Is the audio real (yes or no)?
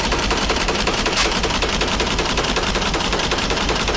no